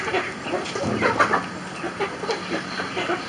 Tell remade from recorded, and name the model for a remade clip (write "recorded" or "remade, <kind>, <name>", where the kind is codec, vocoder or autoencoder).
recorded